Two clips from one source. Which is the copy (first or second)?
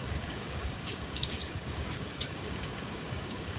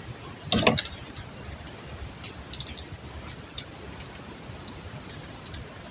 first